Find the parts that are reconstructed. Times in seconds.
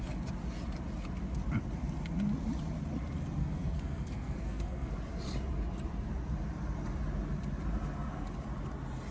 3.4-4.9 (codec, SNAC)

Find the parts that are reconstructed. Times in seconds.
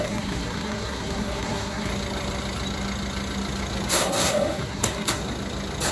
0.0-1.9 (codec, SNAC); 3.9-5.2